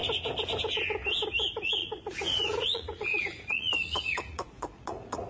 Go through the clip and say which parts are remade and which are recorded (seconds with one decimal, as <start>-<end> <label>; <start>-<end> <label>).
0.0-1.8 recorded; 1.8-5.3 remade